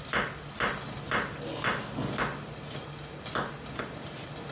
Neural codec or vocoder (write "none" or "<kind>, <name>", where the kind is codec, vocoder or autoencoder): none